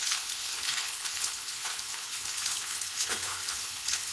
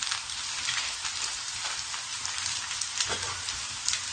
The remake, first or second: first